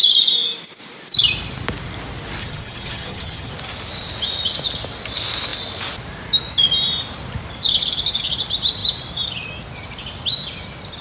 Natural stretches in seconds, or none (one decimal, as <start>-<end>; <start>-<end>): 0.0-2.4; 3.5-11.0